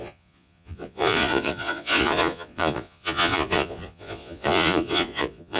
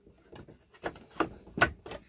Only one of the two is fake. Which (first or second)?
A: first